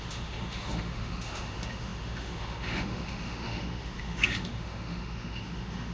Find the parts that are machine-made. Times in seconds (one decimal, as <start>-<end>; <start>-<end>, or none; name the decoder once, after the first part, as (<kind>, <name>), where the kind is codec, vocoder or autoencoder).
0.0-5.9 (autoencoder, DAC-VAE)